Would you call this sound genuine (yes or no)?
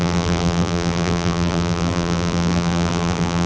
no